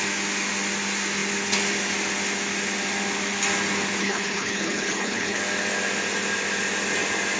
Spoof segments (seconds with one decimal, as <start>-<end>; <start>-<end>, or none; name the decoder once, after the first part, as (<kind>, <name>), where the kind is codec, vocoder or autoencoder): 4.0-5.4 (codec, HILCodec)